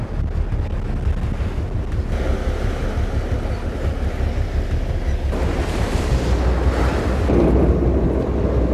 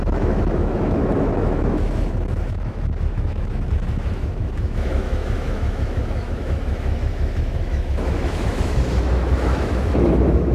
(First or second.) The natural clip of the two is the first